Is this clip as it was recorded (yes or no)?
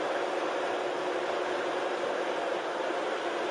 yes